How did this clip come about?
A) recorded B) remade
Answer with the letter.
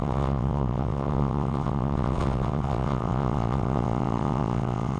B